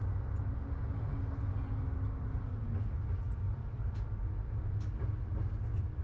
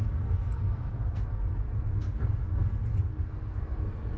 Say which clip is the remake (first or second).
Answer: second